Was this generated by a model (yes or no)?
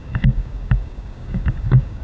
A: yes